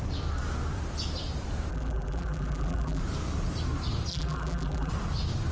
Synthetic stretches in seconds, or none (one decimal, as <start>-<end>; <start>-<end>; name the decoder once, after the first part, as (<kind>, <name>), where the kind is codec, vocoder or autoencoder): 1.7-3.0 (vocoder, BigVGAN v2); 4.1-4.9

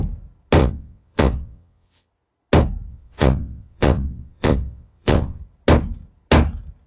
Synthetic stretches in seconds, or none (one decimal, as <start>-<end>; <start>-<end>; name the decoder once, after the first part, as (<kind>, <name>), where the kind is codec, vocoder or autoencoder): 0.6-2.1 (vocoder, WaveNeXt); 2.9-5.4

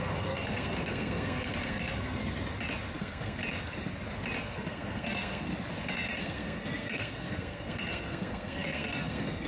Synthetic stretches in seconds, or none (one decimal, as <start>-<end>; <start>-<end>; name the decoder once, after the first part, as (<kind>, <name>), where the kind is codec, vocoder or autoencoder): 0.0-2.2 (codec, SNAC); 3.0-3.4; 4.4-5.5; 6.2-9.5